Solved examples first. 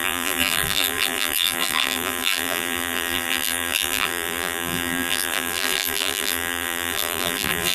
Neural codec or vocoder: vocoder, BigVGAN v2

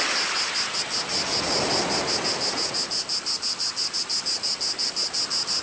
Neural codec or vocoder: none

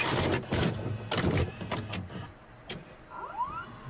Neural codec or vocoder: none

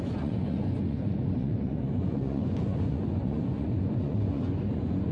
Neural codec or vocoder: vocoder, Vocos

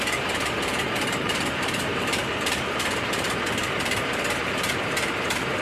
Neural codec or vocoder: vocoder, BigVGAN v2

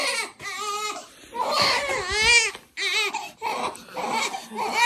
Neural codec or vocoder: none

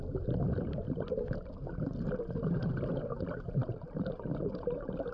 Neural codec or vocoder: none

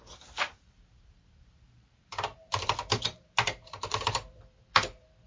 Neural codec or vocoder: vocoder, BigVGAN v2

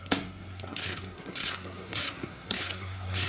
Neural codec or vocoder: codec, SNAC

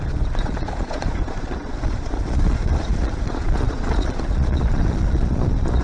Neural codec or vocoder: vocoder, Vocos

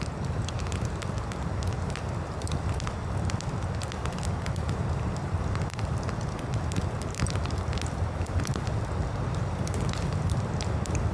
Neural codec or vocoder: none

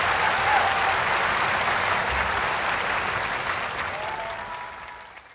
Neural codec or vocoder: none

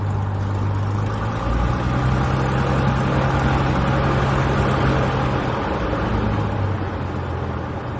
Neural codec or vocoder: none